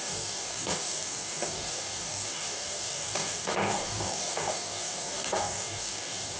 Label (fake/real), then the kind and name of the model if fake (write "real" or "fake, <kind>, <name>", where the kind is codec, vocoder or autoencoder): fake, codec, DAC